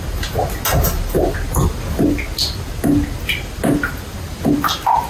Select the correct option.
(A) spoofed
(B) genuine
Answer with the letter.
B